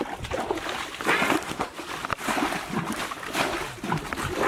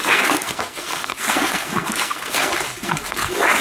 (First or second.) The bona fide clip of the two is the first